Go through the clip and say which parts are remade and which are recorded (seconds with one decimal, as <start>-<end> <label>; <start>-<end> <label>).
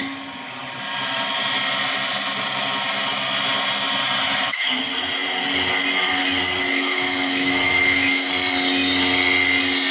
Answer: 0.0-4.2 recorded; 4.2-4.8 remade; 4.8-6.6 recorded; 6.6-8.3 remade; 8.3-9.9 recorded